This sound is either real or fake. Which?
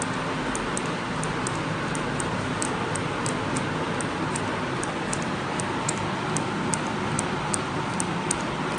real